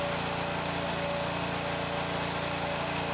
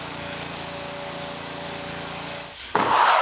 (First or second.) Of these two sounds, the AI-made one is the second